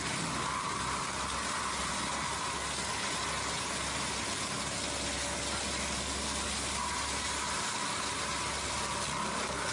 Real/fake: real